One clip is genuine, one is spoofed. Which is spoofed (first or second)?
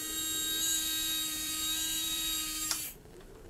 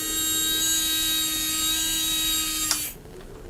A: first